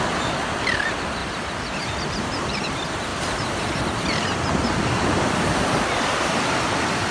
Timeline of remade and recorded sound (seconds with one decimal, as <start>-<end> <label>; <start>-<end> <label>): 0.0-1.2 recorded; 1.2-2.1 remade; 2.1-3.1 recorded; 3.1-3.8 remade; 3.8-7.1 recorded